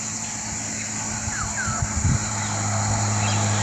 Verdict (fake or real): real